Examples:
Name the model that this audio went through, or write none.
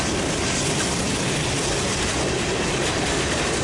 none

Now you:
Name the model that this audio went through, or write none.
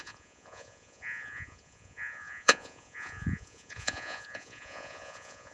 vocoder, Vocos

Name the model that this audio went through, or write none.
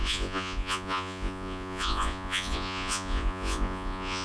vocoder, Vocos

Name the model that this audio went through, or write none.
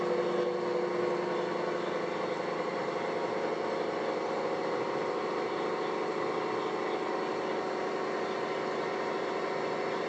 none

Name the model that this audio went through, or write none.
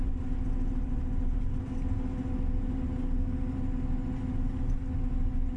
none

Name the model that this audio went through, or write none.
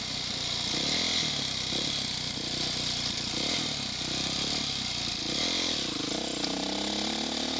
none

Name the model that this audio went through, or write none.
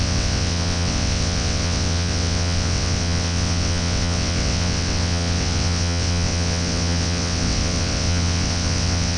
vocoder, WaveNeXt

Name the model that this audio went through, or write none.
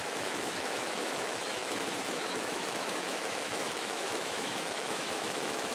autoencoder, DAC-VAE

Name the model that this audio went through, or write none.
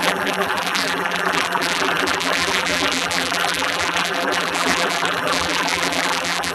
vocoder, BigVGAN v2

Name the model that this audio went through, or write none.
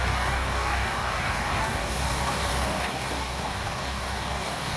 codec, DAC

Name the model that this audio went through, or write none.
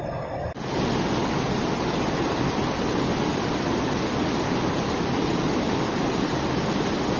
none